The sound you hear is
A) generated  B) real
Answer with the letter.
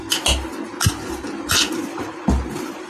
B